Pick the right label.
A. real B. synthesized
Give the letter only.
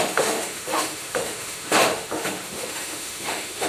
B